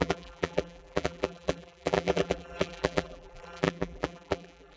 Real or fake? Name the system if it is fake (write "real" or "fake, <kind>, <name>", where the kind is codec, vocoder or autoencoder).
fake, vocoder, BigVGAN v2